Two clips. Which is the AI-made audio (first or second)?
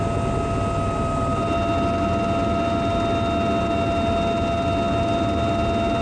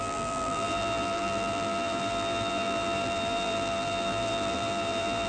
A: second